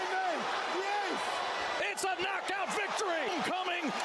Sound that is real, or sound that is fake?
real